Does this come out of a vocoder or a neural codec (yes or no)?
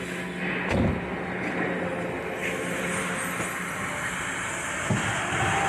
no